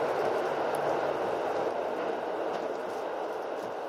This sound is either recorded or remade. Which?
recorded